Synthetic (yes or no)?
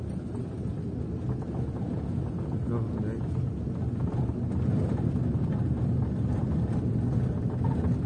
no